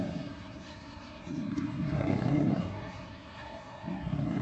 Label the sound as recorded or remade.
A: remade